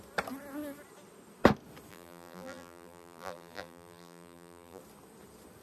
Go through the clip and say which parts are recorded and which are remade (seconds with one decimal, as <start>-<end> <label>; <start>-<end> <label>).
0.0-1.9 recorded; 1.9-4.8 remade; 4.8-5.6 recorded